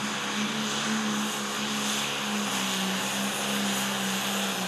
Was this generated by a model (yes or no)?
no